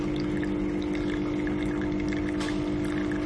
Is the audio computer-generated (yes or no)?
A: no